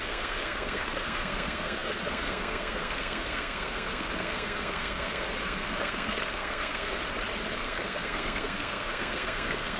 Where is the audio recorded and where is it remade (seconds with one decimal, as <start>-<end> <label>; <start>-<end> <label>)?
0.0-7.0 remade; 7.0-7.5 recorded; 7.5-9.8 remade